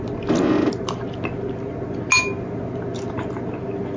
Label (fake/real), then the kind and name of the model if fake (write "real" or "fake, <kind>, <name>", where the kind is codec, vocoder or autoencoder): real